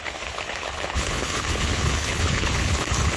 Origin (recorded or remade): remade